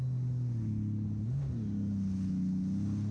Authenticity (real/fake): real